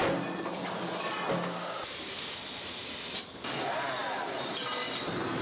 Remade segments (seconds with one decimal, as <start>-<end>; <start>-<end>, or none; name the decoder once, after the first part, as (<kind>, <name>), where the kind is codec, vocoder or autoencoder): none

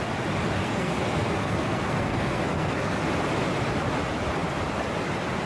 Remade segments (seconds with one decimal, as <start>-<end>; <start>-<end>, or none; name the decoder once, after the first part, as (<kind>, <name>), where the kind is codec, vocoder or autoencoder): 0.6-3.1 (codec, SNAC)

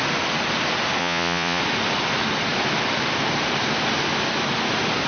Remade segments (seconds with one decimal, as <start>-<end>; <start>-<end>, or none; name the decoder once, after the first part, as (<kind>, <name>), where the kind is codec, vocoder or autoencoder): 1.0-1.6 (vocoder, Vocos)

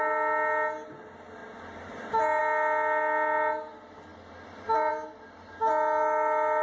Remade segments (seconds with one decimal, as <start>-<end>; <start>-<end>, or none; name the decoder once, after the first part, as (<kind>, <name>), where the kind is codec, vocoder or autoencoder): none

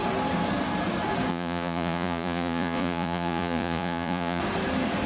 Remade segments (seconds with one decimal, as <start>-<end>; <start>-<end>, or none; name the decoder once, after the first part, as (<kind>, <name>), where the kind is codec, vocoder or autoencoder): 1.3-4.4 (vocoder, Vocos)

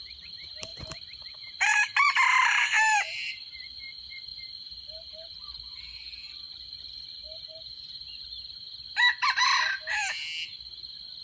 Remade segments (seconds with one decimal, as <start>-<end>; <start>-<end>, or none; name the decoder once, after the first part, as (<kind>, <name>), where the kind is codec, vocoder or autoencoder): 0.0-8.6 (vocoder, BigVGAN v2); 9.7-10.2

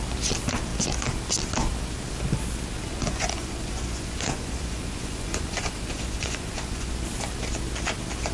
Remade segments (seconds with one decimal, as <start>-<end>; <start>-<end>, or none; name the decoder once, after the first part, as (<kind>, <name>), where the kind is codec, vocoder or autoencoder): 2.9-6.9 (vocoder, Vocos)

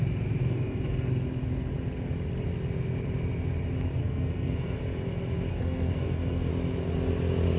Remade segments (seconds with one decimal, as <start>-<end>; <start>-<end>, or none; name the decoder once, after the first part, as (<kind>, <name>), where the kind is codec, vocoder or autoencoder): 0.4-1.1 (codec, SNAC); 4.0-4.8; 5.5-6.5